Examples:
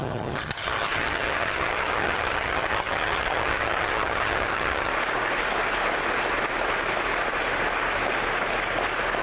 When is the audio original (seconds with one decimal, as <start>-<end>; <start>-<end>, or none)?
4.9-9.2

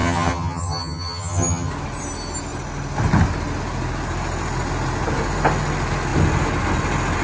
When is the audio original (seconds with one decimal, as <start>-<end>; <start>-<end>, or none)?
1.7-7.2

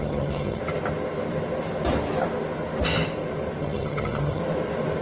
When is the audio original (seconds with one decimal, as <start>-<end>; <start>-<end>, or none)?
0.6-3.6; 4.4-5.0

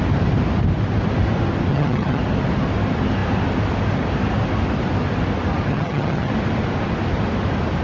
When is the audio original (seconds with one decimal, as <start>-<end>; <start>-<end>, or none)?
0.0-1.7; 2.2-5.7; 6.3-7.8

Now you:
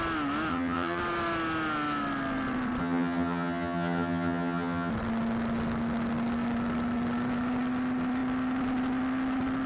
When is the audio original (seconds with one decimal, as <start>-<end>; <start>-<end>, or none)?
0.0-0.5; 1.0-2.8; 4.9-9.7

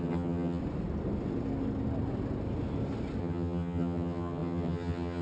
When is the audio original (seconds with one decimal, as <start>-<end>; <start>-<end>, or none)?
0.6-3.2

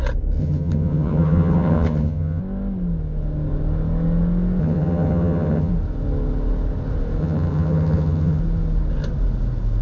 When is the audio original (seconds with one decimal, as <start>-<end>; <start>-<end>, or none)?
0.0-0.4; 2.4-4.6; 5.7-7.2; 8.4-9.8